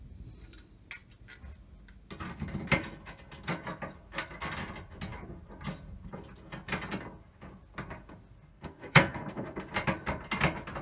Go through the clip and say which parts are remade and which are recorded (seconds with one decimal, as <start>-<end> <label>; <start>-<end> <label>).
0.0-8.5 recorded; 8.5-9.7 remade; 9.7-10.8 recorded